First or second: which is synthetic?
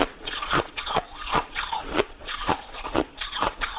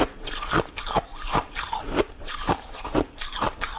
first